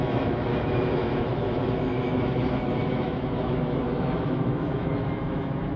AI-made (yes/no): yes